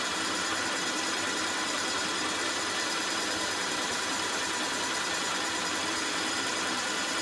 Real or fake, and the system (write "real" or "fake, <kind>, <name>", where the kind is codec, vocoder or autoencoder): fake, vocoder, BigVGAN v2